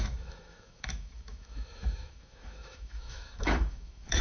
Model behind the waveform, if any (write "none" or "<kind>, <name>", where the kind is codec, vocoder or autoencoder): autoencoder, DAC-VAE